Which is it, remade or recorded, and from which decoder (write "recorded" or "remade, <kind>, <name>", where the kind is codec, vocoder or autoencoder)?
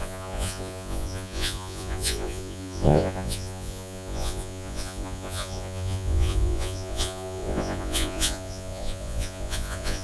remade, vocoder, Vocos